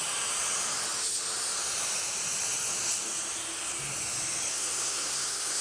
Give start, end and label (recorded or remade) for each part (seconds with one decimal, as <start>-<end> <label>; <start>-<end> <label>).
0.0-4.5 recorded; 4.5-5.6 remade